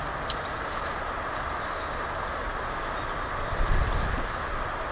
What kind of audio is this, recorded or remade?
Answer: recorded